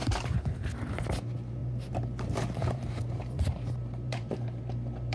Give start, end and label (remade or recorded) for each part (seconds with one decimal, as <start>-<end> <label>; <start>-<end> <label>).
0.0-0.7 remade; 0.7-1.6 recorded; 1.6-4.6 remade; 4.6-5.1 recorded